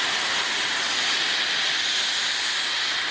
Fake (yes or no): no